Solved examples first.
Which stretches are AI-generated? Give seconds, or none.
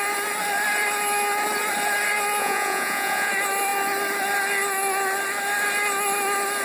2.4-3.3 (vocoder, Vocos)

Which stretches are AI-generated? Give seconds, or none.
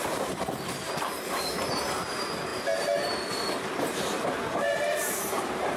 0.0-2.5 (vocoder, BigVGAN v2); 3.3-5.8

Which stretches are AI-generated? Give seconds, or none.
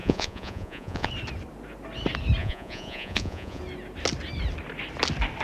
0.0-1.1 (vocoder, Vocos); 2.4-3.6